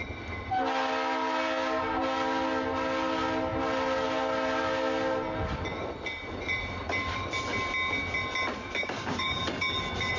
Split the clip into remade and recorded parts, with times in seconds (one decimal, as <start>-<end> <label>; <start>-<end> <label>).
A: 0.0-8.8 recorded; 8.8-9.4 remade; 9.4-10.2 recorded